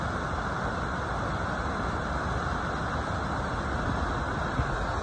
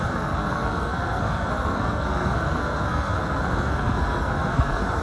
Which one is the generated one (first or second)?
second